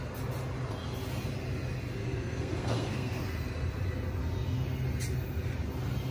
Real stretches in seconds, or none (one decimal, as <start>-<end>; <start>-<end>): 0.0-2.0; 3.2-6.1